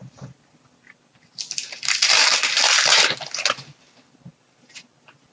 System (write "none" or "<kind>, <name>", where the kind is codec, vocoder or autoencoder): none